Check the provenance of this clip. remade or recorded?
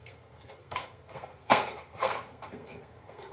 remade